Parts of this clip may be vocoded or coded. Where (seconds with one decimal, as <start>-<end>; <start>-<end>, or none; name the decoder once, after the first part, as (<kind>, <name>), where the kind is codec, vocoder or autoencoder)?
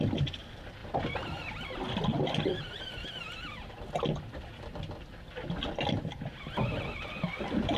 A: none